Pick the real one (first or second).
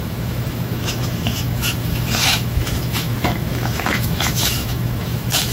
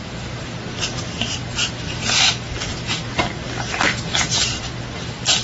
second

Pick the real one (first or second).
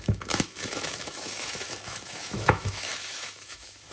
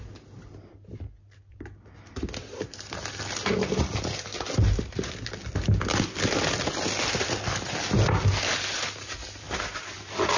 second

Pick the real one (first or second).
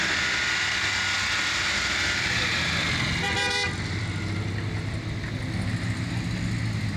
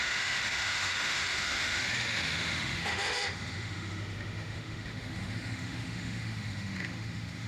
first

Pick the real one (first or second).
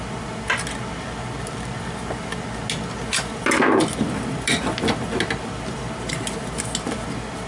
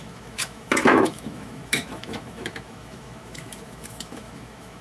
first